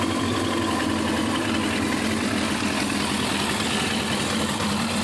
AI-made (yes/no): no